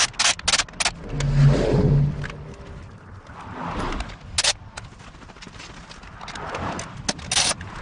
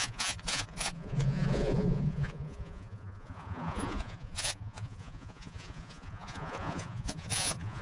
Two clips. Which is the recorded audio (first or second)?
first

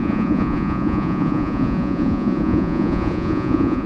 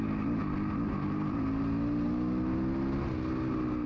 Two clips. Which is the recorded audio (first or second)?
second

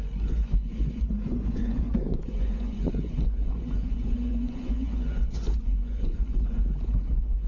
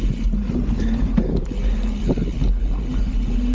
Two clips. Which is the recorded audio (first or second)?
second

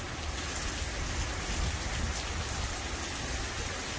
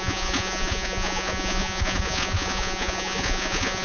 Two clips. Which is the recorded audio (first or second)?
first